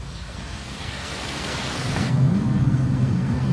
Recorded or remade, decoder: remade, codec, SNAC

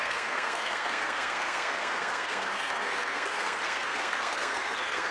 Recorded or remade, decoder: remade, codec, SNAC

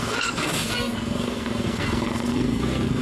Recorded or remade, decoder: remade, codec, SNAC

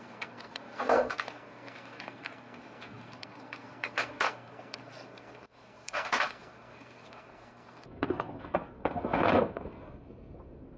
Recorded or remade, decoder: remade, codec, SNAC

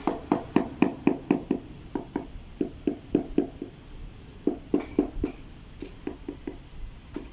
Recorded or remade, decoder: recorded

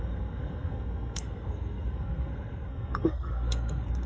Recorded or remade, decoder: remade, codec, SNAC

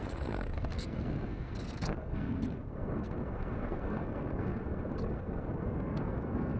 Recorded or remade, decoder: remade, codec, SNAC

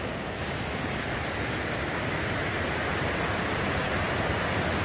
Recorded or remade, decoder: recorded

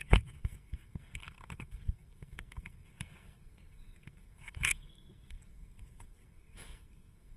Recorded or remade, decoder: remade, codec, SNAC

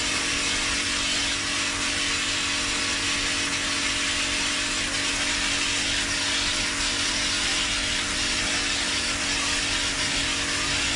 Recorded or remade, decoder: recorded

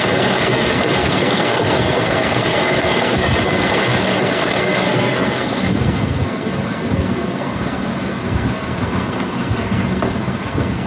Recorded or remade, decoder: remade, codec, SNAC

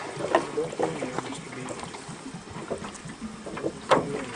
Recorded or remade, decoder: recorded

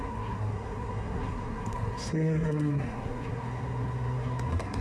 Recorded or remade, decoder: remade, codec, SNAC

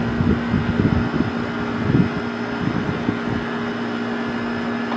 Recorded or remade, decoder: recorded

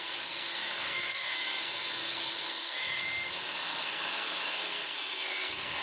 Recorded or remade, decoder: remade, codec, SNAC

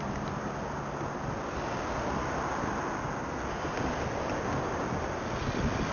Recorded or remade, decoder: recorded